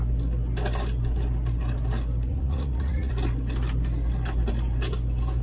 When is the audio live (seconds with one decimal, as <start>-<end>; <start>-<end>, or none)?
0.0-2.3; 3.1-5.4